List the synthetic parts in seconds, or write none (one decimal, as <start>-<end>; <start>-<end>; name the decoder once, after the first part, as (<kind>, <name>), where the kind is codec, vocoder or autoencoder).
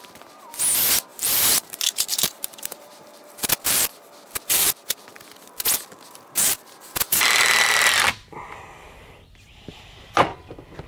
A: 1.1-3.5 (vocoder, BigVGAN v2); 9.7-10.4